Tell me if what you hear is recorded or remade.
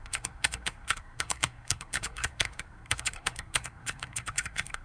remade